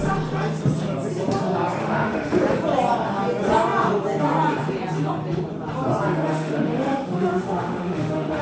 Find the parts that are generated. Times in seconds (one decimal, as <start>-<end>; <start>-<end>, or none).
1.8-2.3; 6.3-8.4